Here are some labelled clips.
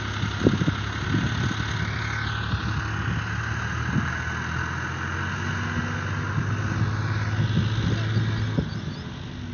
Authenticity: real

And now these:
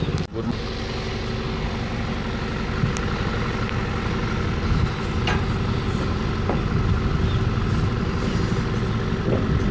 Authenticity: real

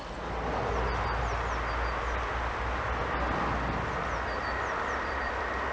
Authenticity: real